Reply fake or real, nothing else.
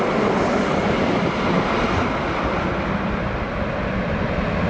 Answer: real